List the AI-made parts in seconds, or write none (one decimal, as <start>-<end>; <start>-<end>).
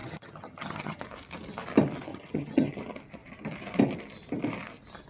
0.0-1.0; 2.1-2.7